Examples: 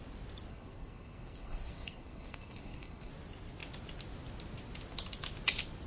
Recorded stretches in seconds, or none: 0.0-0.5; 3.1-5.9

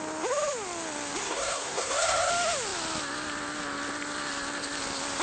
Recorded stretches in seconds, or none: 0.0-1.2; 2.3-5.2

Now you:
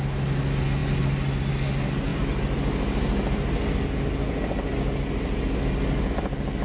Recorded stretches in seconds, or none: 0.0-6.6

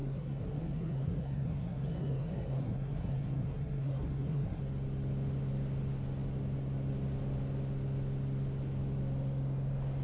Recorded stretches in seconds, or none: 4.6-10.0

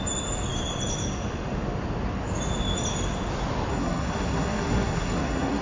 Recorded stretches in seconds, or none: 0.0-3.7